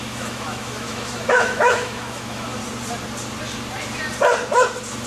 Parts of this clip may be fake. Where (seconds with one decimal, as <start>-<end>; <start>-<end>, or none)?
0.0-2.6